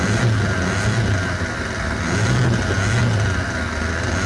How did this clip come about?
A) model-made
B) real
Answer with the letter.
B